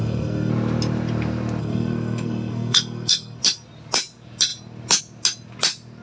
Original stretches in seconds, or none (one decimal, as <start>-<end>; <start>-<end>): 0.5-1.6; 3.4-6.0